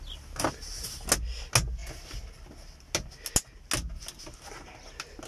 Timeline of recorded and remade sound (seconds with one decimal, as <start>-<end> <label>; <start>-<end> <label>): 0.0-5.3 recorded

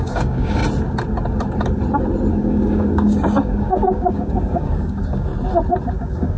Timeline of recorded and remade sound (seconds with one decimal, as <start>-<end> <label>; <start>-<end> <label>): 0.0-0.6 remade; 0.6-2.3 recorded; 2.3-5.3 remade; 5.3-5.9 recorded; 5.9-6.4 remade

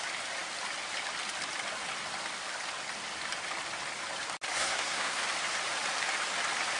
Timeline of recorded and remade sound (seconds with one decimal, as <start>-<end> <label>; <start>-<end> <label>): 0.0-4.5 recorded; 4.5-5.2 remade; 5.2-6.8 recorded

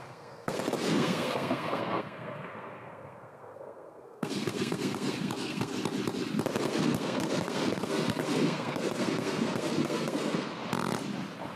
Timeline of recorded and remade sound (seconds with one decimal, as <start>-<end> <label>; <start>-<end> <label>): 0.0-5.7 remade; 5.7-6.6 recorded; 6.6-10.6 remade; 10.6-11.6 recorded